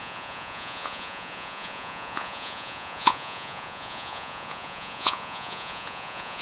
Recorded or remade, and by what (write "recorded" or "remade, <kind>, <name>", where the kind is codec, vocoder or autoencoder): remade, vocoder, Vocos